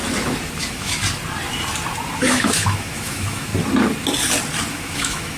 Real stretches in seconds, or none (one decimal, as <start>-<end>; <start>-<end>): 0.0-0.6; 1.0-2.2; 3.5-4.7

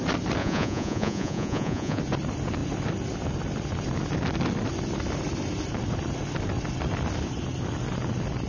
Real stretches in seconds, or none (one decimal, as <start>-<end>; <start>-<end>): 0.0-0.4; 2.0-8.5

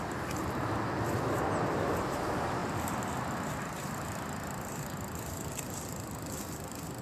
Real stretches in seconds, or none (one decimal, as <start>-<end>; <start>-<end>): 0.0-7.0